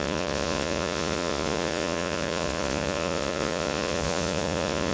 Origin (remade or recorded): remade